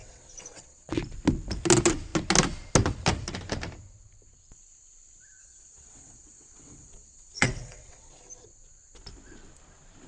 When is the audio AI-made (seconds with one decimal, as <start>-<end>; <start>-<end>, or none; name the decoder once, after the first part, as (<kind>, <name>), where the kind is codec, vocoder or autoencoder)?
0.0-1.0 (vocoder, WaveNeXt); 5.4-8.2